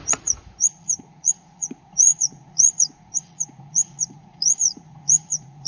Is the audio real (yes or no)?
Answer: no